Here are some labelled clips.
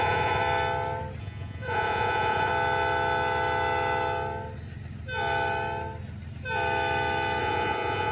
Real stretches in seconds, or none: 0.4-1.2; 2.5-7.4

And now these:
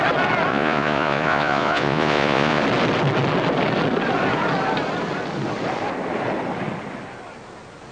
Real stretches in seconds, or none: 0.0-0.5; 2.6-7.9